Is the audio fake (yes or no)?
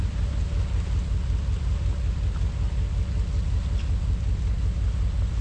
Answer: no